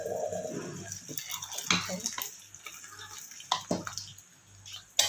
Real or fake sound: real